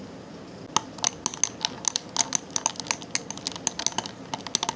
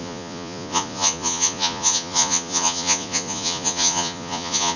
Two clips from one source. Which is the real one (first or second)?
first